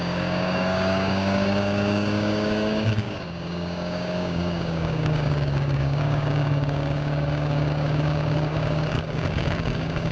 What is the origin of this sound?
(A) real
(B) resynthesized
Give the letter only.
B